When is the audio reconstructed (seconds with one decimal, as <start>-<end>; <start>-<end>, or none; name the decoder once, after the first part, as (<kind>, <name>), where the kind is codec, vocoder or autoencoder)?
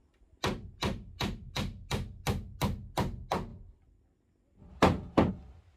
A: none